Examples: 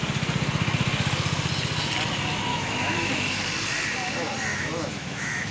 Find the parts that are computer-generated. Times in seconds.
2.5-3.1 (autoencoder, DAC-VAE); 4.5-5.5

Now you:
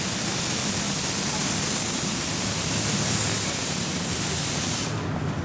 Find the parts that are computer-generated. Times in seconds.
none

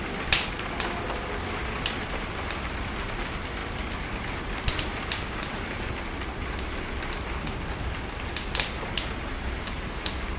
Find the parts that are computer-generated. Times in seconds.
none